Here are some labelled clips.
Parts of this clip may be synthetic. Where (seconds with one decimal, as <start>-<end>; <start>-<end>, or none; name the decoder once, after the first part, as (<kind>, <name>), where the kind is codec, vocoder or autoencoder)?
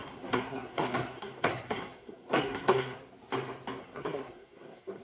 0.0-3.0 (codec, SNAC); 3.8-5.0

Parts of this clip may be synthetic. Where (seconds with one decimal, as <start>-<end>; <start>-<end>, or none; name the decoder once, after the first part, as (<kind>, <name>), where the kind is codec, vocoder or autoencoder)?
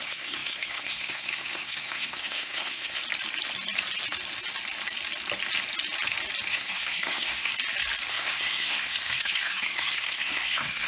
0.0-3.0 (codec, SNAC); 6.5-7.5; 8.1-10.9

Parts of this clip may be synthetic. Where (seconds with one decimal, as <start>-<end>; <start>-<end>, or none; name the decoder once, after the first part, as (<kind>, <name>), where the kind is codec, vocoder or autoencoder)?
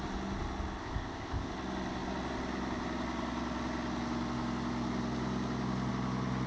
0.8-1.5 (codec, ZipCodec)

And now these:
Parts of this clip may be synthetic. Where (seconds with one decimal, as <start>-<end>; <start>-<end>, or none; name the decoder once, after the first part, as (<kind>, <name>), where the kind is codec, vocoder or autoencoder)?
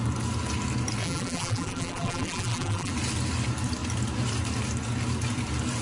1.0-2.9 (vocoder, BigVGAN v2)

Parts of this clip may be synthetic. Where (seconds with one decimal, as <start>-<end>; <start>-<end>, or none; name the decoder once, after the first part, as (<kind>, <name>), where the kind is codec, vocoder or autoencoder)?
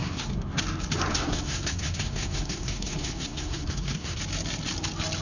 0.0-0.6 (codec, SNAC); 1.1-4.2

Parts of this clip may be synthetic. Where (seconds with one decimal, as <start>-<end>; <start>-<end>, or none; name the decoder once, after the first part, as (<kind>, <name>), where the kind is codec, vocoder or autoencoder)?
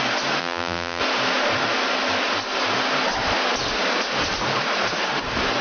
0.4-1.0 (vocoder, BigVGAN v2)